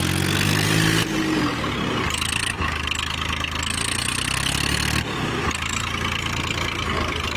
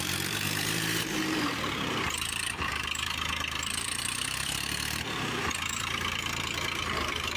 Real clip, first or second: first